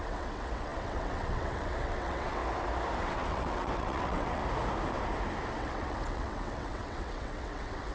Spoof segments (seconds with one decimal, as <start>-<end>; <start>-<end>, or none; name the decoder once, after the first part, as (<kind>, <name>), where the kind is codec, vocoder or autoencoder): 0.0-2.4 (vocoder, WaveNeXt); 3.0-4.4; 5.5-7.9